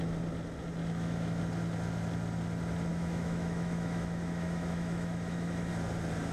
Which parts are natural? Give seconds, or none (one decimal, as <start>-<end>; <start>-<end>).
0.0-0.8; 1.4-2.9; 5.7-6.3